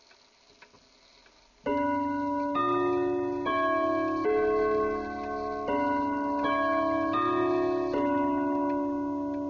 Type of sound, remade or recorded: recorded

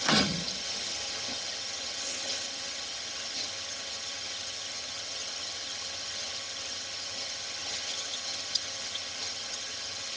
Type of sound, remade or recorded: remade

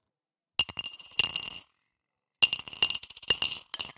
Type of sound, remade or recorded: recorded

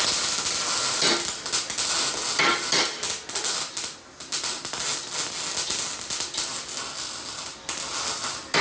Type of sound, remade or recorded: recorded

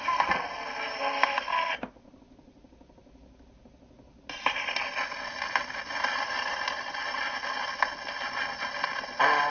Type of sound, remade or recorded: recorded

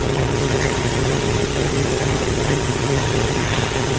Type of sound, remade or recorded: remade